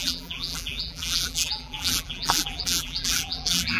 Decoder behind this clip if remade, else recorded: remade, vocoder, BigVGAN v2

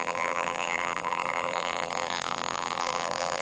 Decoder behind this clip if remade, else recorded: remade, vocoder, BigVGAN v2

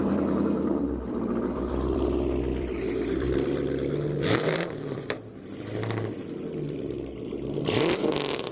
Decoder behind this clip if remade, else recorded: remade, vocoder, BigVGAN v2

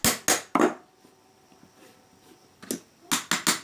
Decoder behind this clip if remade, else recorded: recorded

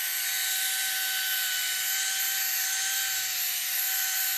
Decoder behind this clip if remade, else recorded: recorded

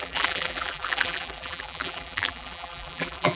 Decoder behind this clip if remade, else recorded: remade, vocoder, BigVGAN v2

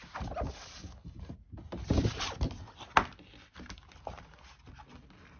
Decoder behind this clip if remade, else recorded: recorded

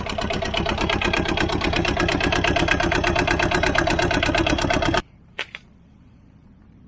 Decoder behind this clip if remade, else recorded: remade, vocoder, BigVGAN v2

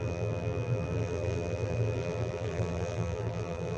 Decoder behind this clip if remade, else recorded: remade, vocoder, BigVGAN v2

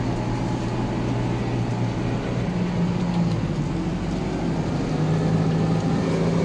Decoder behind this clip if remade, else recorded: recorded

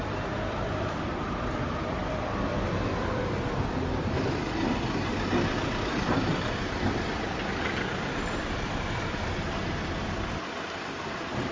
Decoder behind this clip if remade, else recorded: remade, vocoder, BigVGAN v2